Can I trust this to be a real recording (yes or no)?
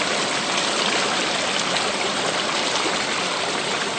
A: yes